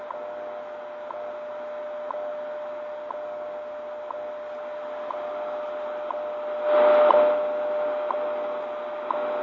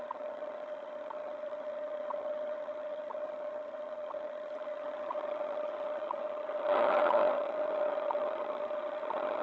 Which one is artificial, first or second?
second